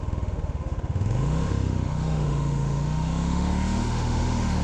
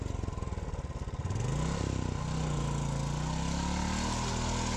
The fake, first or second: first